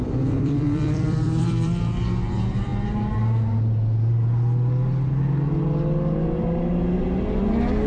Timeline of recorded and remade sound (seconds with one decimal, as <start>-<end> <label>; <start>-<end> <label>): 0.0-2.7 remade; 2.7-7.4 recorded; 7.4-7.9 remade